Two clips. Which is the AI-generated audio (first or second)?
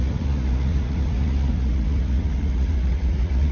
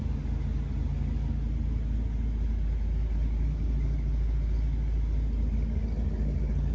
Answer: first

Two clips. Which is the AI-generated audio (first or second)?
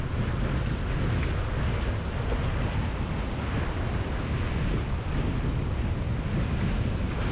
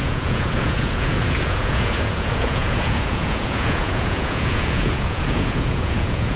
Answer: second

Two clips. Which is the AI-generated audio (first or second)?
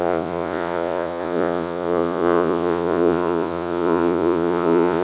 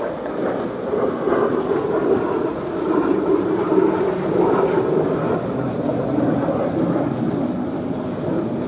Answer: first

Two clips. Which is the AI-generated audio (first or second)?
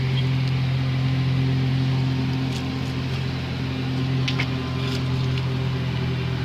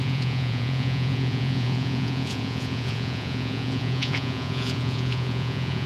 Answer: second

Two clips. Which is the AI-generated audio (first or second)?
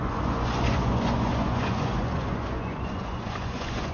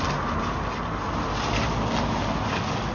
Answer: first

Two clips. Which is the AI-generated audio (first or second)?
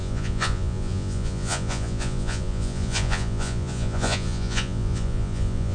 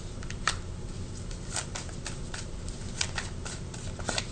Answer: first